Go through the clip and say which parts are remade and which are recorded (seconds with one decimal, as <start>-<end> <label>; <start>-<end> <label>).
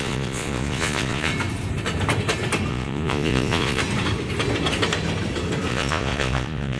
0.0-1.3 remade; 1.3-2.7 recorded; 2.7-3.8 remade; 3.8-5.7 recorded; 5.7-6.8 remade